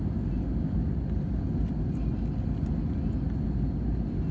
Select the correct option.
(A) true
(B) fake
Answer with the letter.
A